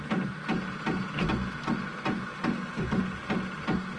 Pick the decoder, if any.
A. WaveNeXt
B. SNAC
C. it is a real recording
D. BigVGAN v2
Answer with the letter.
C